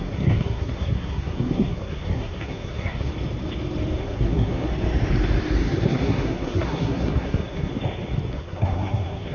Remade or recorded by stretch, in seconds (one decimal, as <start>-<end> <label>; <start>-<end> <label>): 0.0-3.1 remade; 3.1-4.0 recorded; 4.0-4.7 remade; 4.7-5.6 recorded; 5.6-7.7 remade; 7.7-8.3 recorded; 8.3-9.3 remade